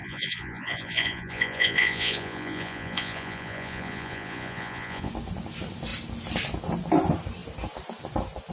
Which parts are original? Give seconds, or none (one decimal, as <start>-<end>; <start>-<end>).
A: 5.1-8.5